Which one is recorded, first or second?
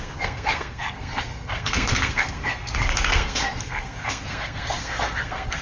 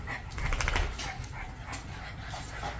second